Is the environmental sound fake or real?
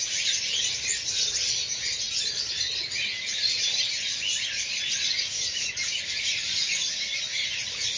real